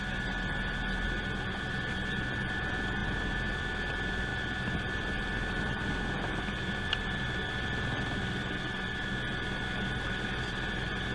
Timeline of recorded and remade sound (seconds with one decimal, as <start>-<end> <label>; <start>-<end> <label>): 0.0-11.1 recorded